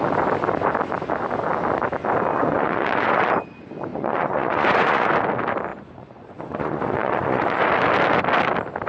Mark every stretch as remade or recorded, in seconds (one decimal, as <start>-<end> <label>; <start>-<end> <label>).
0.0-2.3 recorded; 2.3-3.3 remade; 3.3-3.9 recorded; 3.9-5.1 remade; 5.1-5.7 recorded; 5.7-7.6 remade; 7.6-8.9 recorded

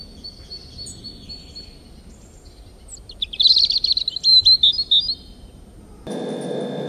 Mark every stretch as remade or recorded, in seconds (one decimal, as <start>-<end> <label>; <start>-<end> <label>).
0.0-0.6 recorded; 0.6-1.1 remade; 1.1-6.9 recorded

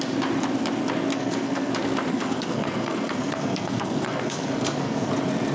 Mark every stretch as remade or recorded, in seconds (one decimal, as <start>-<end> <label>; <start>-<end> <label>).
0.0-1.1 recorded; 1.1-1.7 remade; 1.7-2.1 recorded; 2.1-5.1 remade; 5.1-5.5 recorded

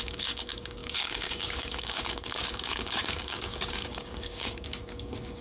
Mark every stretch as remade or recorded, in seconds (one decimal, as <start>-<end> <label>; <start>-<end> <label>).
0.0-5.4 remade

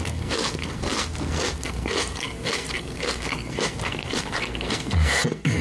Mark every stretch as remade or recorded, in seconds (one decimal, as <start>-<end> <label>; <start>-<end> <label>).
0.0-5.6 remade

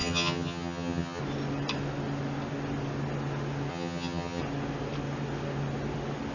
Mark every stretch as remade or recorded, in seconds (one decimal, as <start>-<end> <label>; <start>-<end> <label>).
0.0-1.2 remade; 1.2-3.7 recorded; 3.7-4.4 remade; 4.4-6.3 recorded

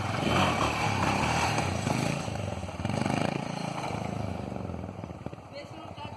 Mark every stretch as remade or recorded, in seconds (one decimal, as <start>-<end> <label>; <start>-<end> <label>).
0.0-2.6 remade; 2.6-4.3 recorded; 4.3-5.6 remade; 5.6-6.2 recorded